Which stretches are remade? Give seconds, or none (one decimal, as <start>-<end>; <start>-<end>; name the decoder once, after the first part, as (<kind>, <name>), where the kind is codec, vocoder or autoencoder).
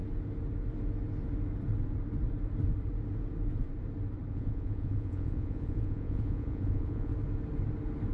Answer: 4.3-7.1 (vocoder, Vocos)